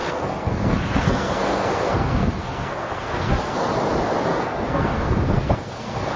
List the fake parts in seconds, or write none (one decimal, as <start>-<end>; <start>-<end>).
0.0-3.7; 4.3-6.2